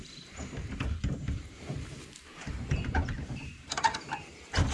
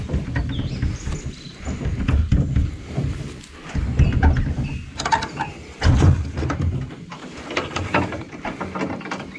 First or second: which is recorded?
second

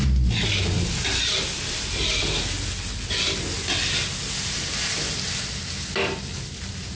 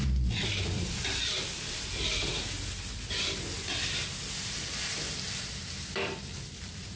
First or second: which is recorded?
first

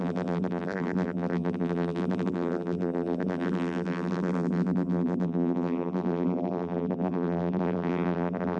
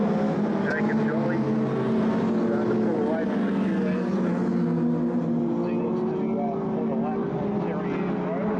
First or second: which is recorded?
second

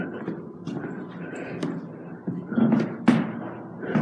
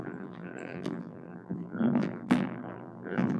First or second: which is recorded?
first